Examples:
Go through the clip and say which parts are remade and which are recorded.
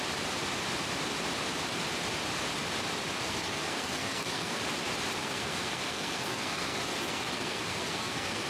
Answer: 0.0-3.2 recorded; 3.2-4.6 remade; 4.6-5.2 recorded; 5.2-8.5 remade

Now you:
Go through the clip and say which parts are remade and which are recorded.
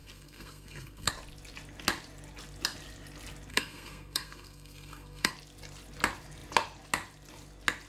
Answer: 0.0-1.1 remade; 1.1-3.5 recorded; 3.5-5.3 remade; 5.3-7.9 recorded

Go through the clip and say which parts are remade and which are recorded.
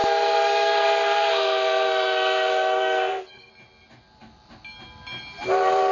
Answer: 0.0-3.5 remade; 3.5-5.9 recorded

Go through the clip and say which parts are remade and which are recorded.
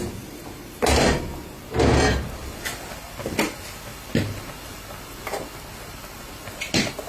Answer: 0.0-7.1 recorded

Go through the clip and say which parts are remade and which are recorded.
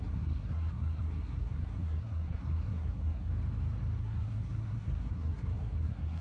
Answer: 0.0-3.3 remade; 3.3-4.0 recorded; 4.0-6.2 remade